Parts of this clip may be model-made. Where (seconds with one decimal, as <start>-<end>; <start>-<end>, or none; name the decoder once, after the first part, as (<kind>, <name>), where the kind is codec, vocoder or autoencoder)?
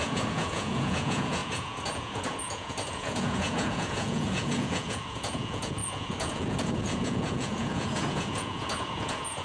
0.0-9.4 (vocoder, Vocos)